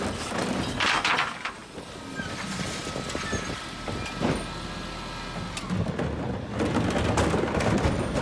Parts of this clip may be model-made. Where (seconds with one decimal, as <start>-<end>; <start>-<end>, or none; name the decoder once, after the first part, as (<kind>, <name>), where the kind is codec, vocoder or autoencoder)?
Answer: none